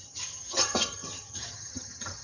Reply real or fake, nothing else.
fake